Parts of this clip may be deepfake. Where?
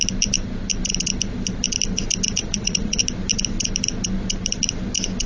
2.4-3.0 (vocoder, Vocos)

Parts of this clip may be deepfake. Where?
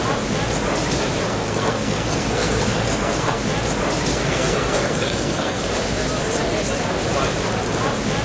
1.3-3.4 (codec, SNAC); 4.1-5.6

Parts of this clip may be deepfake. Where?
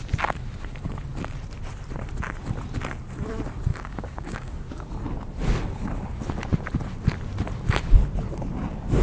3.7-4.9 (codec, DAC)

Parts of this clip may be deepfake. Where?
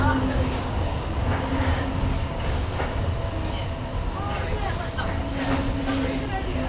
0.0-2.7 (codec, DAC)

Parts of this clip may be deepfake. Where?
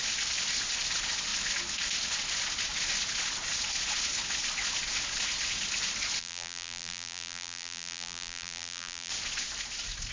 6.2-9.1 (vocoder, BigVGAN v2)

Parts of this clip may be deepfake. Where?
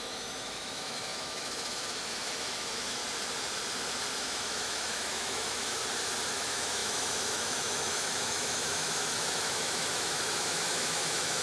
0.0-3.0 (autoencoder, DAC-VAE); 4.2-5.8; 6.3-11.4